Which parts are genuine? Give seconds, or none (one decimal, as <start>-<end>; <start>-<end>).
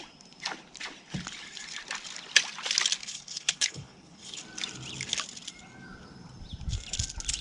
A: 0.0-3.0; 4.4-7.4